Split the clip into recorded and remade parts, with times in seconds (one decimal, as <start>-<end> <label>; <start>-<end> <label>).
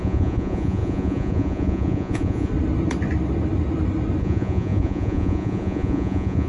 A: 0.0-2.5 remade; 2.5-4.2 recorded; 4.2-6.5 remade